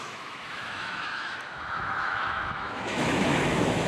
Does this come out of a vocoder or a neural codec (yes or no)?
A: yes